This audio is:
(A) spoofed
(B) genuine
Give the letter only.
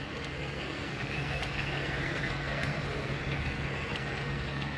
A